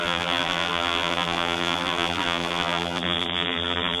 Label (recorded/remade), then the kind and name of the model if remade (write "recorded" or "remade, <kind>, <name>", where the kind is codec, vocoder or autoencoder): remade, vocoder, BigVGAN v2